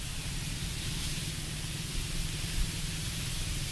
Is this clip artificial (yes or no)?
yes